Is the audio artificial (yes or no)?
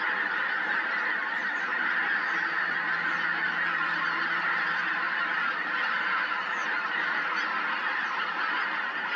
no